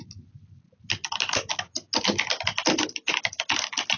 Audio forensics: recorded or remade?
recorded